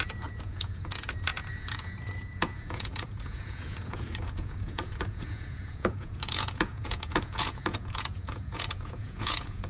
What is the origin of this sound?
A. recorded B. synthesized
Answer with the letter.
B